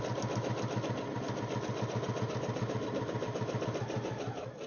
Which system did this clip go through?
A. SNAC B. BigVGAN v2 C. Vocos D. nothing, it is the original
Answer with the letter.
D